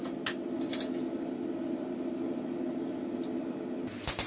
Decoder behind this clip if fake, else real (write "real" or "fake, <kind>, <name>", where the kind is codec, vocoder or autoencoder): real